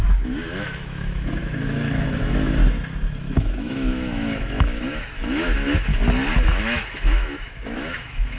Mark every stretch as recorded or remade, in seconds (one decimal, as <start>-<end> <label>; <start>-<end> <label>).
0.0-2.6 remade; 2.6-3.2 recorded; 3.2-5.9 remade; 5.9-6.6 recorded; 6.6-8.4 remade